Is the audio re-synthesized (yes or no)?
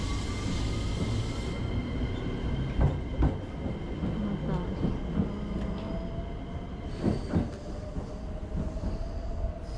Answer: no